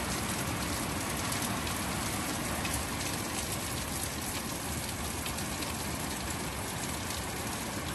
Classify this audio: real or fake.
real